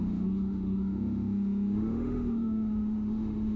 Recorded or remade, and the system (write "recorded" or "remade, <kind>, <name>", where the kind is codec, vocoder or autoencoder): remade, autoencoder, DAC-VAE